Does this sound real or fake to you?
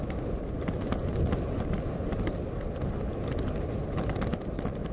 real